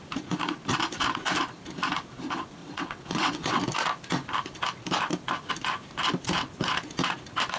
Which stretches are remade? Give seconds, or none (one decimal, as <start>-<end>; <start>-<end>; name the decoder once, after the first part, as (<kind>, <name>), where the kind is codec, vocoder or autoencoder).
2.6-3.6 (vocoder, WaveNeXt)